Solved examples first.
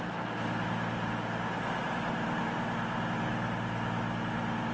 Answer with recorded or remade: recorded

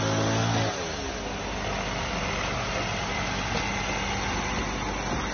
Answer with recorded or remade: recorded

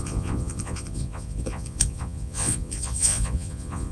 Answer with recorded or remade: remade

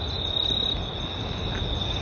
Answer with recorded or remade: recorded